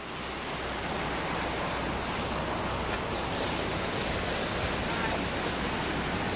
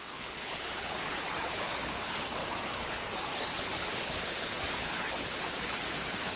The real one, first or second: first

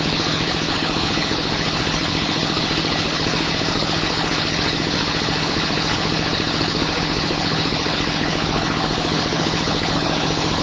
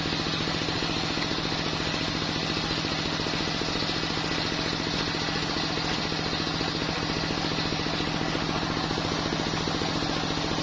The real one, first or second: second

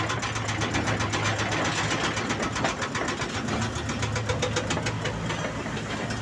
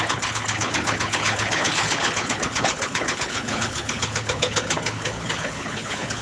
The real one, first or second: first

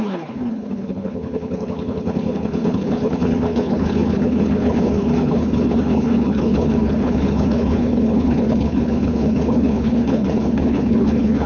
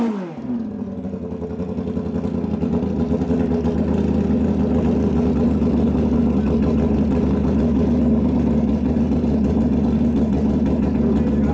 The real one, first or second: second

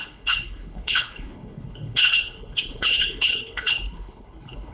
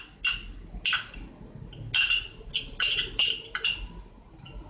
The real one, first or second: second